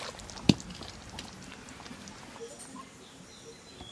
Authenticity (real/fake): real